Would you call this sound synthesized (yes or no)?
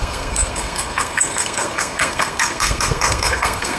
yes